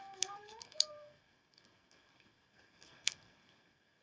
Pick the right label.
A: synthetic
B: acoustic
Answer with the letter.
A